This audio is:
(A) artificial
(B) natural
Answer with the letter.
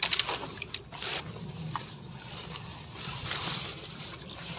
B